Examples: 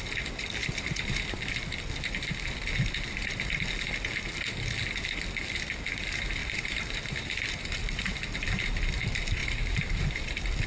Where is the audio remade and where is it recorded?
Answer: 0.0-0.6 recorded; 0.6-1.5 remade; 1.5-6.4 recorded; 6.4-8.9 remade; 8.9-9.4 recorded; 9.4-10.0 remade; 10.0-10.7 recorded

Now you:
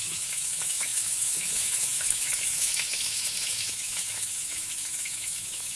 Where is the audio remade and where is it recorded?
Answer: 0.0-5.8 remade

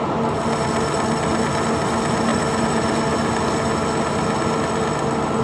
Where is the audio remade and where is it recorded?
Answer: 0.0-5.4 recorded

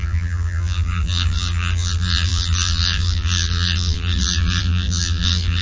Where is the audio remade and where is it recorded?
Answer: 0.0-5.6 remade

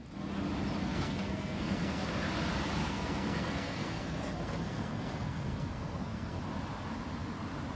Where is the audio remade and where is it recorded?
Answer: 0.0-0.8 recorded; 0.8-2.1 remade; 2.1-2.8 recorded; 2.8-6.4 remade; 6.4-7.7 recorded

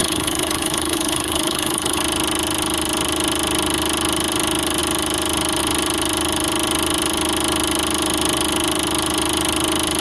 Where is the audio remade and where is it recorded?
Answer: 0.0-2.0 remade; 2.0-10.0 recorded

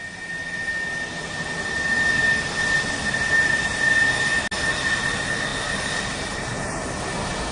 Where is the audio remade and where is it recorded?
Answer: 0.0-7.5 recorded

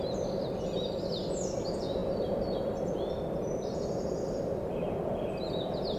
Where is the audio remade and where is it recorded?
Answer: 0.0-6.0 recorded